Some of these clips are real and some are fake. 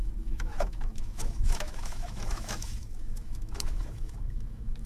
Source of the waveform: fake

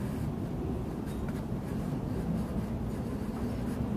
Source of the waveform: real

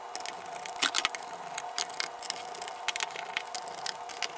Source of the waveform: real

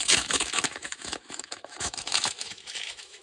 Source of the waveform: fake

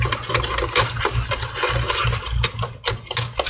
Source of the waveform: real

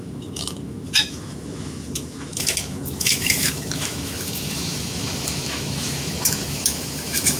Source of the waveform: fake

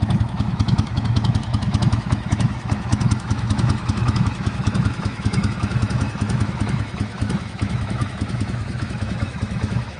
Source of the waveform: fake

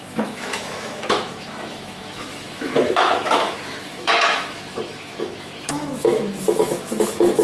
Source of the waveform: fake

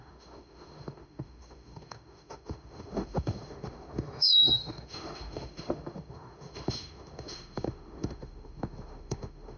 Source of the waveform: fake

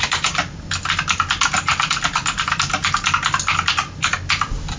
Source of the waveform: real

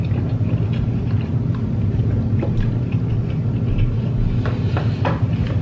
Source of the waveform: real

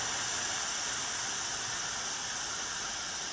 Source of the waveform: real